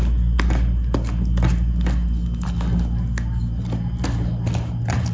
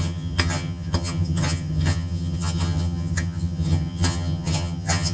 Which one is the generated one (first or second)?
second